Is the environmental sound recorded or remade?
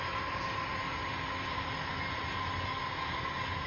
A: recorded